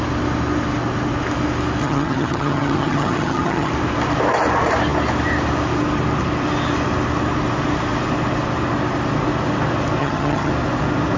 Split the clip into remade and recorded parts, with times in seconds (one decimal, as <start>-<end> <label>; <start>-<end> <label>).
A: 0.0-1.8 recorded; 1.8-3.7 remade; 3.7-10.0 recorded; 10.0-10.5 remade; 10.5-11.2 recorded

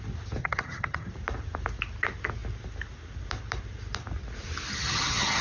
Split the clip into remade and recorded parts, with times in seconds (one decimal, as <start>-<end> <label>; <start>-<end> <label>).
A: 0.0-0.4 recorded; 0.4-1.1 remade; 1.1-4.7 recorded; 4.7-5.4 remade

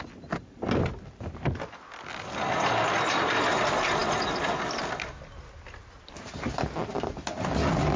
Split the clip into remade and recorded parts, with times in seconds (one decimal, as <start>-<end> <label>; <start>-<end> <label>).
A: 0.0-8.0 recorded

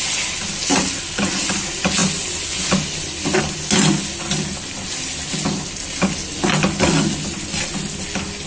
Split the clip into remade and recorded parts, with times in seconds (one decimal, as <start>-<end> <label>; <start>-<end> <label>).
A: 0.0-8.5 recorded

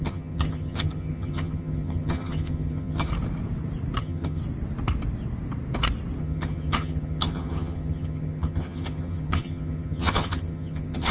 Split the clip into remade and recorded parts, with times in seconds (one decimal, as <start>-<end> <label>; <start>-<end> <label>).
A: 0.0-3.1 remade; 3.1-4.0 recorded; 4.0-4.4 remade; 4.4-6.2 recorded; 6.2-11.1 remade

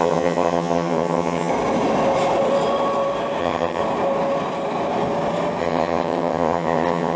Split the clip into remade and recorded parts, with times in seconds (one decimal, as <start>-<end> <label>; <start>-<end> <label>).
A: 0.0-1.5 remade; 1.5-3.4 recorded; 3.4-3.8 remade; 3.8-5.6 recorded; 5.6-7.2 remade

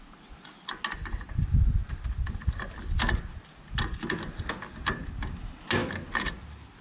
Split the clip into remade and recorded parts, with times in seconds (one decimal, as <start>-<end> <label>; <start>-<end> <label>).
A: 0.0-6.8 recorded